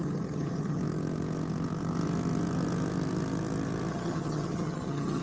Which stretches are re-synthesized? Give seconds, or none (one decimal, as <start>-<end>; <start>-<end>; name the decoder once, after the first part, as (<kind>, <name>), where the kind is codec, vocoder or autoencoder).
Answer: 0.0-0.8 (vocoder, HiFi-GAN); 3.9-5.2